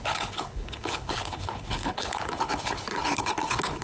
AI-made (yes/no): yes